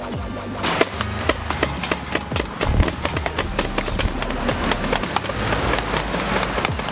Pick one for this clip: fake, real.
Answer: real